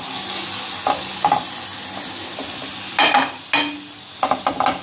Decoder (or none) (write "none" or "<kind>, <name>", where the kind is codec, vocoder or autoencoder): none